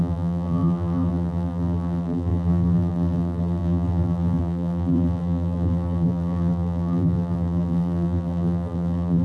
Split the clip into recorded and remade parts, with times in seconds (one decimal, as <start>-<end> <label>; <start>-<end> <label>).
0.0-9.2 remade